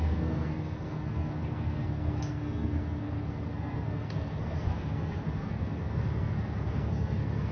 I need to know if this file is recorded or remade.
remade